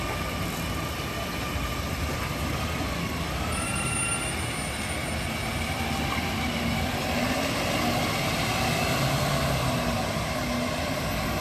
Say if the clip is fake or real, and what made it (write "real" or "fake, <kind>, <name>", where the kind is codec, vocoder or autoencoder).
real